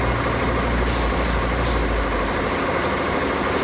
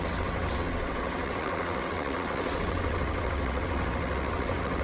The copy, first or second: second